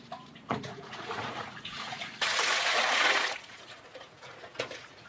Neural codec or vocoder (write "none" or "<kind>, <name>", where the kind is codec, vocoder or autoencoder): vocoder, Vocos